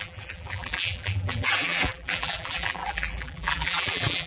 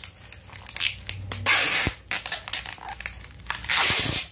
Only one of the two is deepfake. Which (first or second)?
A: first